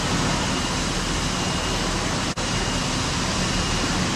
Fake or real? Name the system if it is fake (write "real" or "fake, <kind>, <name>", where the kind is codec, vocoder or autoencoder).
real